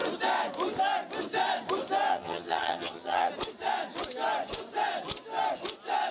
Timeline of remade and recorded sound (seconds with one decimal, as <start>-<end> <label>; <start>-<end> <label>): 0.0-2.1 recorded; 2.1-3.3 remade; 3.3-6.1 recorded